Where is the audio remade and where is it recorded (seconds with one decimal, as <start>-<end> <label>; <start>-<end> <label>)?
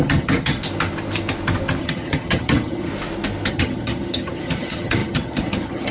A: 0.0-0.6 remade; 0.6-1.8 recorded; 1.8-2.9 remade; 2.9-3.5 recorded; 3.5-5.9 remade